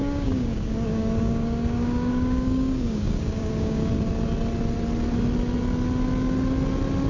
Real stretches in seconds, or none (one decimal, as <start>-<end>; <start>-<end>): 3.9-7.1